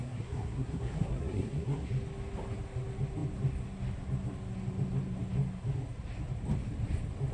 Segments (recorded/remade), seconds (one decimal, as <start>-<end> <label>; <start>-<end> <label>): 0.0-1.9 remade; 1.9-7.3 recorded